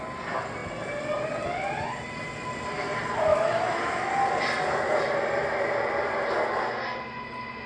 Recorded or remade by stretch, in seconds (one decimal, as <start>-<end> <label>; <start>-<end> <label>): 0.0-3.3 recorded; 3.3-4.1 remade; 4.1-7.7 recorded